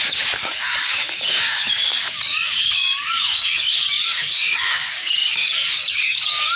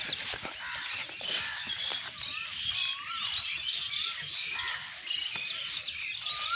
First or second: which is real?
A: second